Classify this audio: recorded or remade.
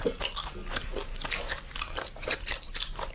recorded